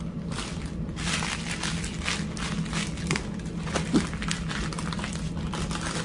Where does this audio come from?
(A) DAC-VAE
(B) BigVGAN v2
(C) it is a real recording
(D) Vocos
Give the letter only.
C